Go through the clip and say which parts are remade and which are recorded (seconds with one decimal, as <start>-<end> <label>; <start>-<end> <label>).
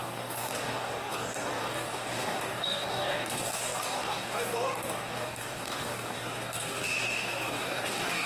0.0-8.3 remade